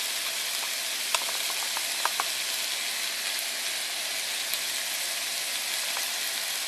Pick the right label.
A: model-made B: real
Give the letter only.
B